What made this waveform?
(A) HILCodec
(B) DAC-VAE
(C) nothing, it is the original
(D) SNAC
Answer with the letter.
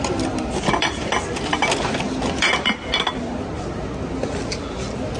C